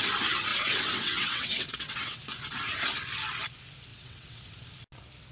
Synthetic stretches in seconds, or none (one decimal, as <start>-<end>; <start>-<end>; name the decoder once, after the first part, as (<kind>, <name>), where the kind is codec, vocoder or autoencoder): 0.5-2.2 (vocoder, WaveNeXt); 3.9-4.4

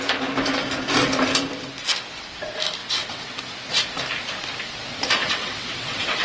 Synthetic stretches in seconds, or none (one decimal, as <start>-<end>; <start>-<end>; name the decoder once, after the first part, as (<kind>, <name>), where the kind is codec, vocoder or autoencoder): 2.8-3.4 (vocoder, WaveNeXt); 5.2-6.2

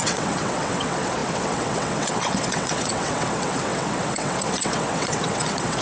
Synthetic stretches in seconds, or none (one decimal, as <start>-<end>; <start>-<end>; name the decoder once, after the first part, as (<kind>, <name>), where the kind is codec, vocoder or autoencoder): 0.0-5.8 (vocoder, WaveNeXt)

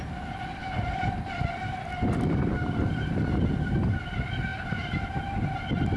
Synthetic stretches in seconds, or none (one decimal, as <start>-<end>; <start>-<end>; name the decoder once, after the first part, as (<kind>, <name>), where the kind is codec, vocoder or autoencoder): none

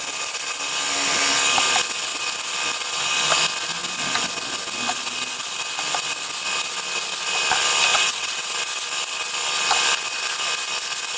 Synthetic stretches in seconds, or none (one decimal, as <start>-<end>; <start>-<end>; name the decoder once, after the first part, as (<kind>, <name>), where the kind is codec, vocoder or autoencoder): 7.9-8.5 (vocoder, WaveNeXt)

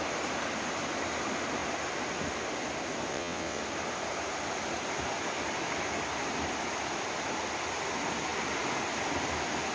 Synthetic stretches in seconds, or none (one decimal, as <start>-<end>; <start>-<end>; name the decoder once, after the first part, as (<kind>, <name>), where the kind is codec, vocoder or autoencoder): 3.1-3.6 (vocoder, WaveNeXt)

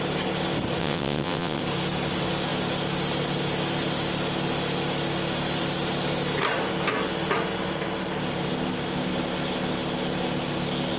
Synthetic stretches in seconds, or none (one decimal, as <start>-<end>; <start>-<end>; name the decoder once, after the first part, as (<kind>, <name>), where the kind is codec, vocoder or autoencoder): 0.8-1.6 (vocoder, WaveNeXt)